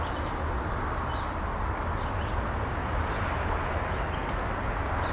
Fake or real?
real